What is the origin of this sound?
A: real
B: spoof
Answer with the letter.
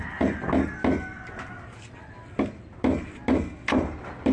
A